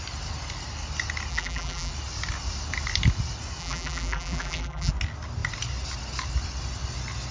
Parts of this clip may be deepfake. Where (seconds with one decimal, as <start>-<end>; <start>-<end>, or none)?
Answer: 1.3-1.9; 3.6-4.9